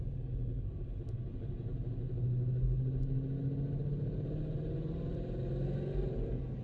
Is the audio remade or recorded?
recorded